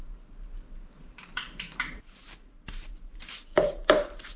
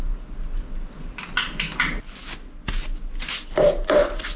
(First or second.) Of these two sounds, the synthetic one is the first